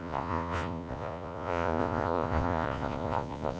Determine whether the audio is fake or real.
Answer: fake